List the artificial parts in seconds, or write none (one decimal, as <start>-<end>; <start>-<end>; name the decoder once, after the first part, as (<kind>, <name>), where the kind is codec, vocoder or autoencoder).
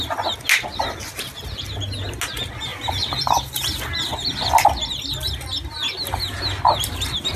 2.7-4.0 (vocoder, BigVGAN v2)